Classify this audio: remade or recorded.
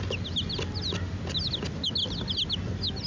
recorded